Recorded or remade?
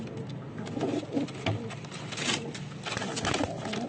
recorded